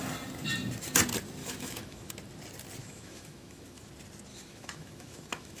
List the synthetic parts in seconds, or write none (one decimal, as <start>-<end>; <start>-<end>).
1.4-2.1; 2.8-3.9; 4.3-5.6